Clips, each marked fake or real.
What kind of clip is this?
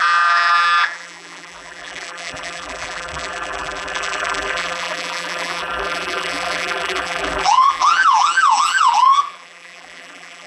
fake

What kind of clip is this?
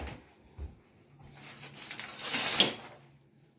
real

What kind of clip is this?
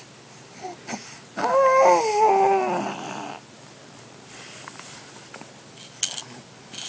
real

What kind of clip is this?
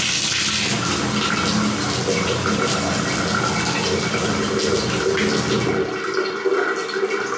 real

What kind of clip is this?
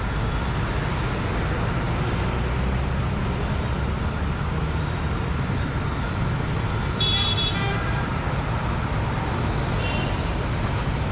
real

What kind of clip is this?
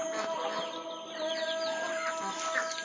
real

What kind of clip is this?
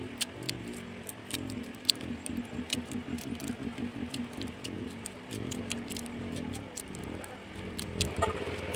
fake